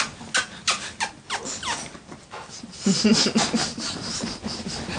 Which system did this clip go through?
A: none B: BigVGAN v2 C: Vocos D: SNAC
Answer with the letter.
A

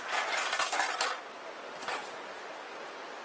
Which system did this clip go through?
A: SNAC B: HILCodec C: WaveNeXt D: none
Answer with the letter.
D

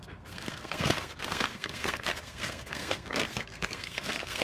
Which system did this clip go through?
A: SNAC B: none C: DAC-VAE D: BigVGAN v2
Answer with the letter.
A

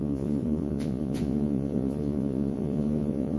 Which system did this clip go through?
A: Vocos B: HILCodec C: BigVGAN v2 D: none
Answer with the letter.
A